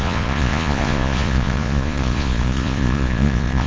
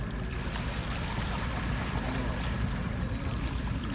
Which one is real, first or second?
second